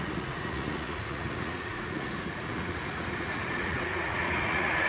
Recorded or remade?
remade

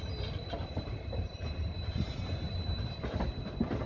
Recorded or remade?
recorded